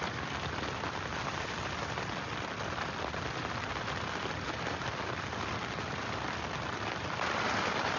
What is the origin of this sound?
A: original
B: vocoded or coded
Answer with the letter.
A